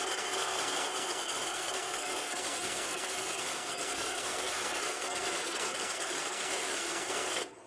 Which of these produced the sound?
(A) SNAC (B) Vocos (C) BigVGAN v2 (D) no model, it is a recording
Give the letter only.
A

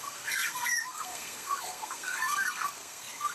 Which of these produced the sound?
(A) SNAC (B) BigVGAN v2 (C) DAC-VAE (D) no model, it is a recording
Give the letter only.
A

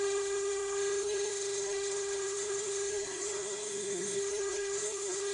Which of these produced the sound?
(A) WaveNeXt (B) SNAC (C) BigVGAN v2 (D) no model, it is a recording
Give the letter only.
B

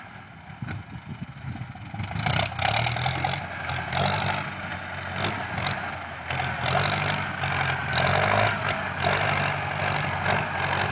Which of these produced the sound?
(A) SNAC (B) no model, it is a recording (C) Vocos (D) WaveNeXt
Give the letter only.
B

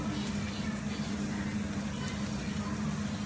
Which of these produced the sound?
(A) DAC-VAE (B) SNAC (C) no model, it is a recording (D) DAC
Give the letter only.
C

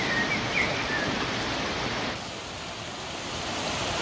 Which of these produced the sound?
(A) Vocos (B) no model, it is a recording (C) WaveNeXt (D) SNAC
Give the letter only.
B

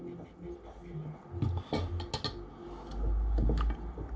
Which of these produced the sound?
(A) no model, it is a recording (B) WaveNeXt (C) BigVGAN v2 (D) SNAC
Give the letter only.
A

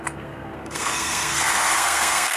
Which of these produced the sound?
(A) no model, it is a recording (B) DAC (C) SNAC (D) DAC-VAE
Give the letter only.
C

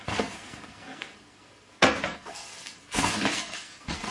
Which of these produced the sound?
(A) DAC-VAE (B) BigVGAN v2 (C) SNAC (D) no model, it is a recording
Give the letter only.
C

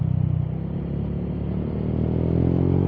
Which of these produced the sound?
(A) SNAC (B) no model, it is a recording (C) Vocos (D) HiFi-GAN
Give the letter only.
B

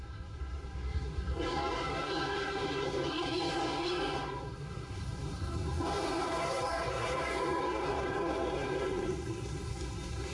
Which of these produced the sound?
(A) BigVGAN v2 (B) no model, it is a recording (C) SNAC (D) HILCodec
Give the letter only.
C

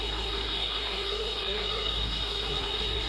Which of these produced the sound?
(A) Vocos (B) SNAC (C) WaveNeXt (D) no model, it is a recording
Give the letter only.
B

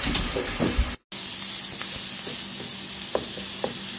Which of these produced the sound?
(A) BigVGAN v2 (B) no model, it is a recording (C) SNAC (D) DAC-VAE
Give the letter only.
B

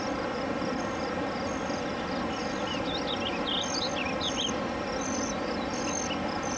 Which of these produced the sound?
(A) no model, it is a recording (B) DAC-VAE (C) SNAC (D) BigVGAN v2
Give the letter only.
A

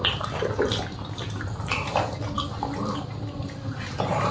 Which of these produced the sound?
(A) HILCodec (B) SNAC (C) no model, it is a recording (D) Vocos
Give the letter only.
C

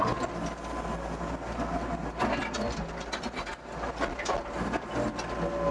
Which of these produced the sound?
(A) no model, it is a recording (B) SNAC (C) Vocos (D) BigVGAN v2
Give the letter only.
A